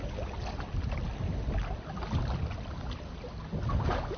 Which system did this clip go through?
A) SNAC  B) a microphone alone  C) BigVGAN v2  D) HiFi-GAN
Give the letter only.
B